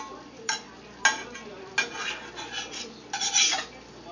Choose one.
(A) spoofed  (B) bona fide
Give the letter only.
B